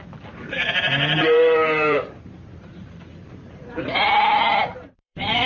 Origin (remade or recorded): remade